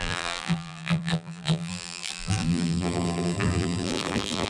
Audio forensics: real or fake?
fake